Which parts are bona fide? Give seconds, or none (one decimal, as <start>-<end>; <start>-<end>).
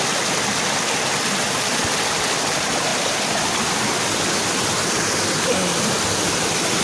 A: 0.0-6.8